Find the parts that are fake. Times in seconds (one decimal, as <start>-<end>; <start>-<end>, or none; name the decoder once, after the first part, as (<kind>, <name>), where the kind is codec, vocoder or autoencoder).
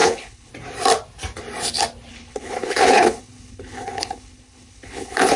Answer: 0.0-0.5 (codec, HILCodec); 2.1-5.4